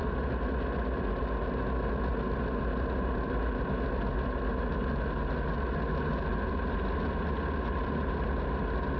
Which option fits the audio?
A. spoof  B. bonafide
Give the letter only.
B